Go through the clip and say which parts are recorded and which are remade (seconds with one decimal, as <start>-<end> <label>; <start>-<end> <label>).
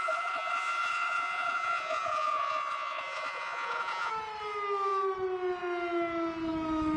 0.0-4.1 remade; 4.1-7.0 recorded